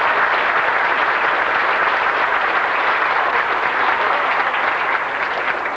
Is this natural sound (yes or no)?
yes